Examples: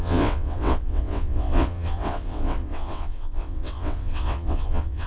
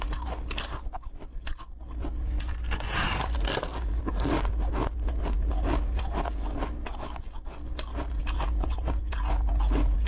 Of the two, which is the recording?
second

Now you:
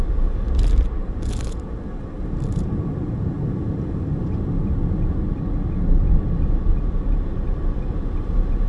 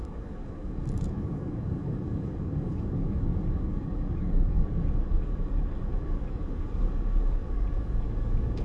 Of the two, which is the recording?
first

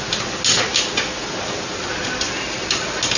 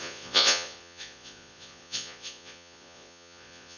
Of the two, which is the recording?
first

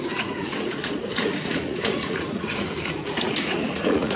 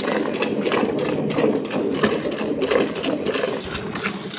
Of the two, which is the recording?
second